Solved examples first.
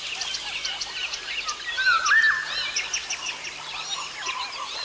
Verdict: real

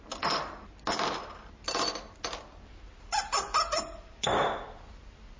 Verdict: real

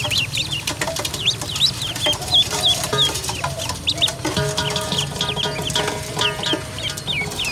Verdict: real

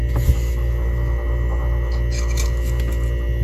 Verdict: real